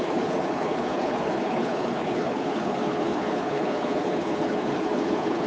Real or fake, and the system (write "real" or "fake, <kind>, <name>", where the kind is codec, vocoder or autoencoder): fake, codec, HILCodec